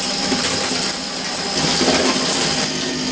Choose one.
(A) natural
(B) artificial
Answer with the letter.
A